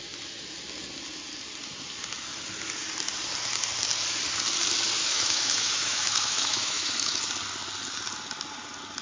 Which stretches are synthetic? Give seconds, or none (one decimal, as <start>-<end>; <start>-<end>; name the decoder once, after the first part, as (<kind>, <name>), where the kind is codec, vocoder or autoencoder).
5.0-7.2 (autoencoder, DAC-VAE)